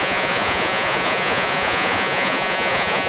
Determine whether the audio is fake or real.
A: fake